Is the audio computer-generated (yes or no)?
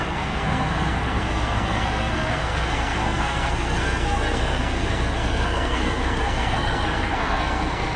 yes